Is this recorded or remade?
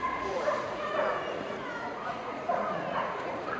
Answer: remade